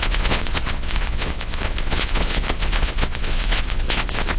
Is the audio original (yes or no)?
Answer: no